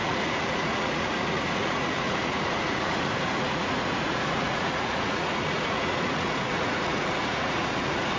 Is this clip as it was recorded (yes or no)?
no